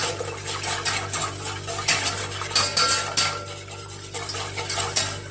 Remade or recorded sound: recorded